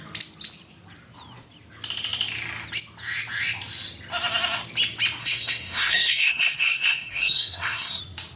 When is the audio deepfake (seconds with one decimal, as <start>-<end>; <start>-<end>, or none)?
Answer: 5.2-8.0